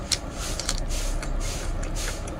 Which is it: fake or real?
real